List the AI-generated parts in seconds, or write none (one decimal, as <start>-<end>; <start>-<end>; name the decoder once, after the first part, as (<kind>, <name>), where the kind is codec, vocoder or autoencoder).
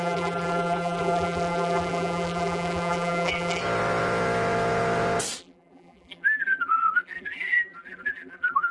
0.0-3.6 (vocoder, BigVGAN v2); 5.4-8.7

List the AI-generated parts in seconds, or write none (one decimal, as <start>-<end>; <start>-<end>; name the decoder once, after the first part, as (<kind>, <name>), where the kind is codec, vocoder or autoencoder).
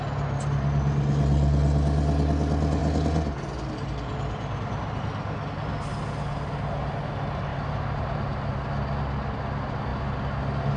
7.5-8.5 (vocoder, BigVGAN v2)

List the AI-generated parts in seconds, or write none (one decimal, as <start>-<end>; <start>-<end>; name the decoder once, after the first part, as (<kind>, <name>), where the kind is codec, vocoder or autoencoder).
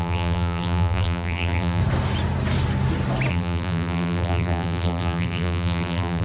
0.0-1.8 (vocoder, BigVGAN v2); 3.3-6.2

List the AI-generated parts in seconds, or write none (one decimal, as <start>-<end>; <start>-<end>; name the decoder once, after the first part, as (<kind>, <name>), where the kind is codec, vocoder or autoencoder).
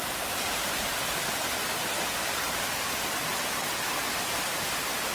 0.0-3.3 (vocoder, BigVGAN v2); 4.0-5.1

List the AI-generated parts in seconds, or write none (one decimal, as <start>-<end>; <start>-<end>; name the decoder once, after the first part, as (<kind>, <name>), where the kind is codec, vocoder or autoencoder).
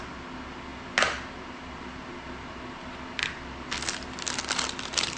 none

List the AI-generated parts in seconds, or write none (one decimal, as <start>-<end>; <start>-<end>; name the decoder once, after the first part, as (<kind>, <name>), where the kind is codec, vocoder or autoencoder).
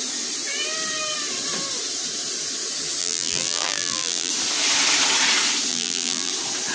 3.0-4.3 (vocoder, BigVGAN v2); 5.7-6.3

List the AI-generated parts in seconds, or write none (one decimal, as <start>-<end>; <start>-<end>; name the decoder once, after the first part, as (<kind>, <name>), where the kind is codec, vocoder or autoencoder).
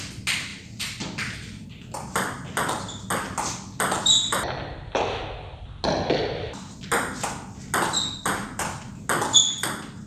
none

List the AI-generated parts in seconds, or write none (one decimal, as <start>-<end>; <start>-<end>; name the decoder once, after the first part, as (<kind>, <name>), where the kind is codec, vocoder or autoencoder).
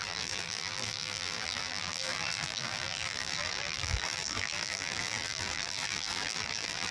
0.0-6.9 (vocoder, BigVGAN v2)